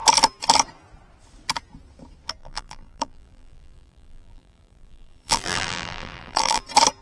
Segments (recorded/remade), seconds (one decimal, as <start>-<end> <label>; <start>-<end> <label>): 0.0-2.4 recorded; 2.4-6.6 remade; 6.6-7.0 recorded